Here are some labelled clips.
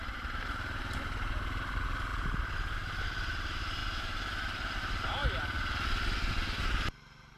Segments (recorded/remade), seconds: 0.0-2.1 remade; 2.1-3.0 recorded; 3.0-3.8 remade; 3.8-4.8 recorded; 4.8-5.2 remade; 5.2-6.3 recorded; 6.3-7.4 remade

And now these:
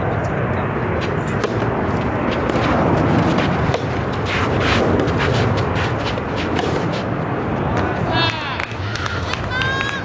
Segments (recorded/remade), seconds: 0.0-8.6 recorded; 8.6-9.3 remade; 9.3-10.0 recorded

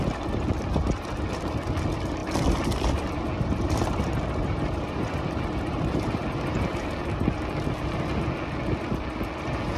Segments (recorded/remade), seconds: 0.0-2.2 recorded; 2.2-5.4 remade; 5.4-9.8 recorded

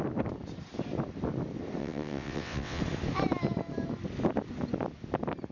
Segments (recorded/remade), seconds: 0.0-1.8 recorded; 1.8-2.8 remade; 2.8-5.5 recorded